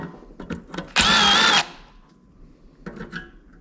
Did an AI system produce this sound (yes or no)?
no